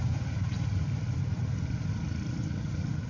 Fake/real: real